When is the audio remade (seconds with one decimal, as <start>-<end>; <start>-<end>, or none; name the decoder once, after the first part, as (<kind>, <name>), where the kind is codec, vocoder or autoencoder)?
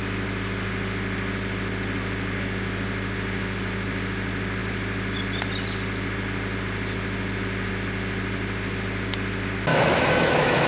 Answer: 9.7-10.7 (autoencoder, DAC-VAE)